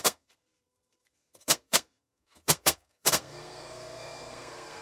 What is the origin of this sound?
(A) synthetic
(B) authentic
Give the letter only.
A